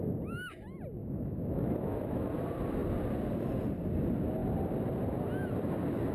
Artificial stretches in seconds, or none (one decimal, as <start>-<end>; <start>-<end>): 1.0-2.3